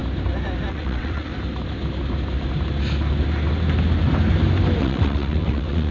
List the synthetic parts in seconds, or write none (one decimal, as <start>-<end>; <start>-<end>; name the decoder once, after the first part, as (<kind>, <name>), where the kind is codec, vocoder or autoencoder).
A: 0.7-1.3 (vocoder, WaveNeXt); 4.8-5.9